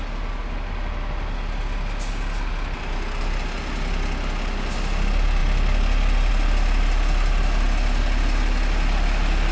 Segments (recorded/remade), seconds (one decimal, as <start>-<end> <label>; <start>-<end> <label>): 0.0-9.5 recorded